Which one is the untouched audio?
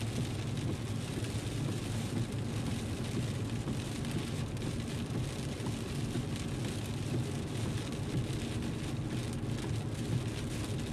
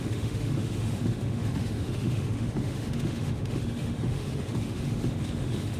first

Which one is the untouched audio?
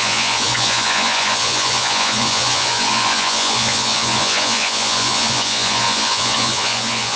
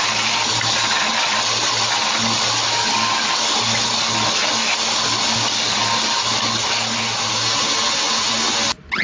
second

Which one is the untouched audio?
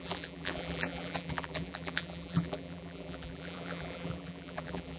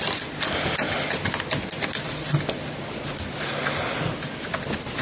second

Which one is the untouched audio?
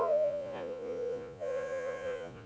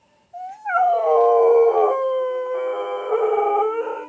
second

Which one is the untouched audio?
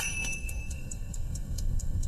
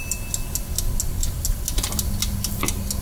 second